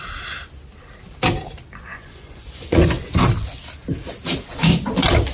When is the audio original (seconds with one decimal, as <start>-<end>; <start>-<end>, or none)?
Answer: 0.0-1.9; 3.1-5.3